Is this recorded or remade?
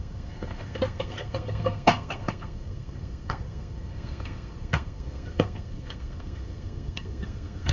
remade